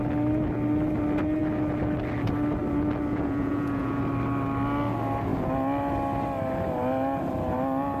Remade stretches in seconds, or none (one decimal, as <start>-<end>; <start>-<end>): 3.1-4.0